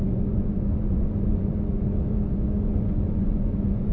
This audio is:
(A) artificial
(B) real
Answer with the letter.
A